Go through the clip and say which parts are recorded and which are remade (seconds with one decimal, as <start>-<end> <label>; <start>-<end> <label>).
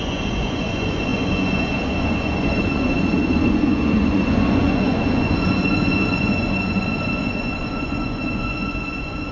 0.0-9.3 remade